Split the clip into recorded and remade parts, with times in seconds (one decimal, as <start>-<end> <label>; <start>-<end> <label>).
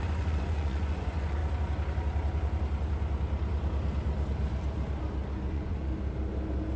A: 0.0-1.4 remade; 1.4-5.5 recorded; 5.5-5.9 remade; 5.9-6.8 recorded